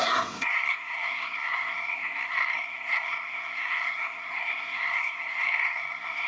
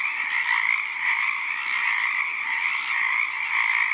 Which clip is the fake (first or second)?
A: first